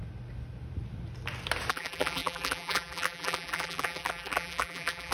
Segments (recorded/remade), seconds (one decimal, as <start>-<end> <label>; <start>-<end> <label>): 0.0-1.7 recorded; 1.7-5.1 remade